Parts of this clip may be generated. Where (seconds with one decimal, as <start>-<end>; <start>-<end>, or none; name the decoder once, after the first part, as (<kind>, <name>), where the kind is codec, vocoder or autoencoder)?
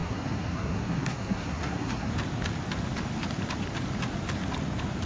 0.0-2.1 (codec, SNAC)